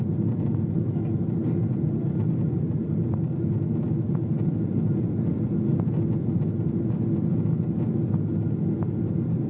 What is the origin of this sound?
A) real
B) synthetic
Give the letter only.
A